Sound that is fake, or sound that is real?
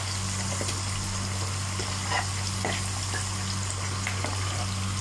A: real